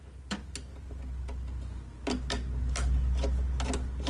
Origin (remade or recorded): recorded